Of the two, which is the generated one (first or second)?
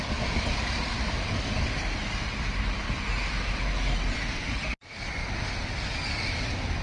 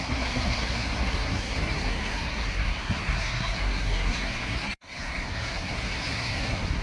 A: second